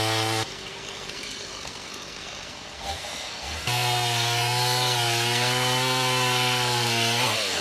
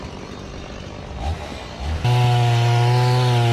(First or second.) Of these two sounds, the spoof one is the first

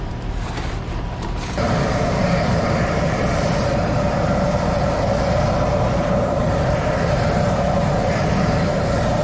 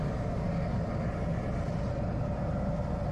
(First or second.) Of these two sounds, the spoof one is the first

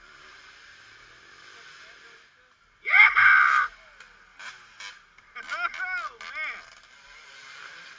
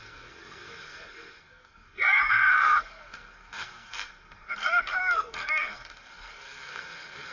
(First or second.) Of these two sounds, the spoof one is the second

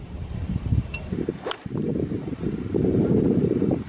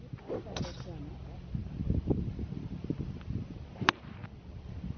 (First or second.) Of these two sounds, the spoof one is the first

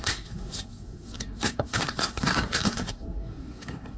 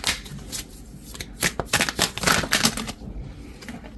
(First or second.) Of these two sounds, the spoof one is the first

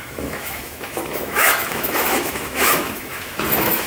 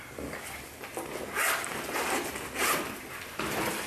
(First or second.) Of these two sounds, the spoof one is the first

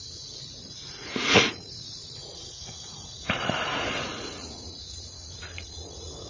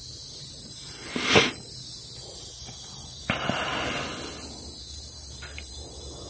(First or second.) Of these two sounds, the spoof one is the first